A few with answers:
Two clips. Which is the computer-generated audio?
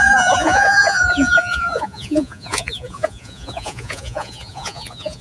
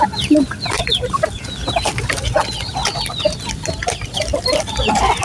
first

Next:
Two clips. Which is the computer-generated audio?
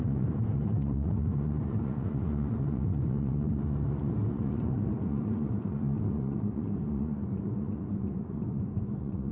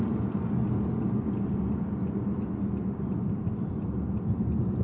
first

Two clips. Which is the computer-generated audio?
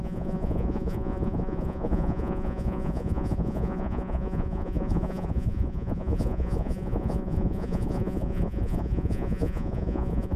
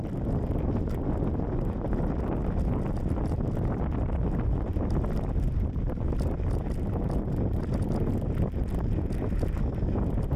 first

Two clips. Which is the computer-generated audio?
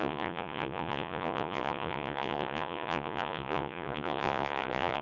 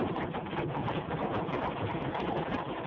first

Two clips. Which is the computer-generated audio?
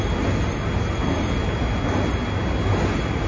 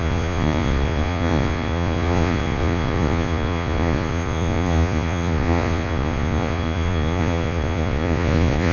second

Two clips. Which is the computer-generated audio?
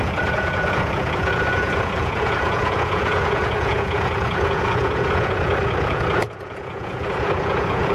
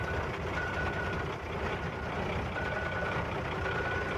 first